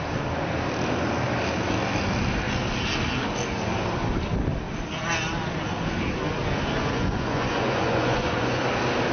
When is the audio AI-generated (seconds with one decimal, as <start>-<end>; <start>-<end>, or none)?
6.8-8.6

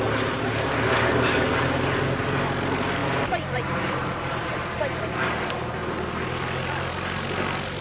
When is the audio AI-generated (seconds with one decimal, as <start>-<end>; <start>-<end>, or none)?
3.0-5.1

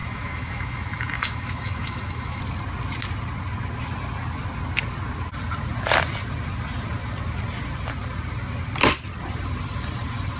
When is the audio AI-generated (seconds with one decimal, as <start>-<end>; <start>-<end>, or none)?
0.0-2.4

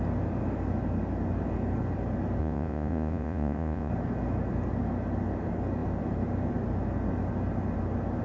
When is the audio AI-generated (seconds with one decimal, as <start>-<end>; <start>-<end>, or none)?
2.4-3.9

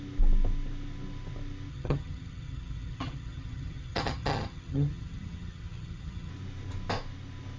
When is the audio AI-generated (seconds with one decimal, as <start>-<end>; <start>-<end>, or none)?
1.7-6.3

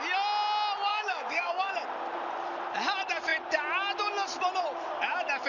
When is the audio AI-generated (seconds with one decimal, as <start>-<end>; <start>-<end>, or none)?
0.9-1.7